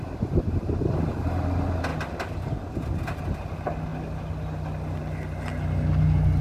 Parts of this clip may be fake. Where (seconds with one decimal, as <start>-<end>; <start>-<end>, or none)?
none